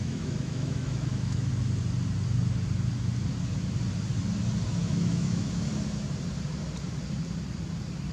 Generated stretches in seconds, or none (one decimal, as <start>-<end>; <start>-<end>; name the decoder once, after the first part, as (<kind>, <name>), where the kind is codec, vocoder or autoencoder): 0.0-1.5 (autoencoder, DAC-VAE); 4.8-5.7